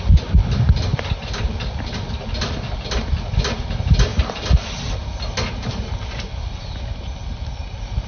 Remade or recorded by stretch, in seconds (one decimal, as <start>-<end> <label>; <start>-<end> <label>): 0.0-8.1 recorded